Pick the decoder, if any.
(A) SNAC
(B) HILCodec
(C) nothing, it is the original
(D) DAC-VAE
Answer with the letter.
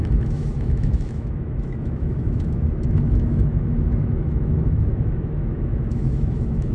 D